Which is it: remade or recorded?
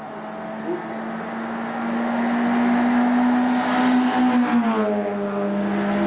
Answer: recorded